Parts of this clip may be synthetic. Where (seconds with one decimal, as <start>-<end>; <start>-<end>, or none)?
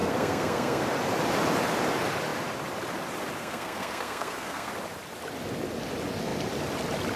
0.0-0.8; 3.4-4.7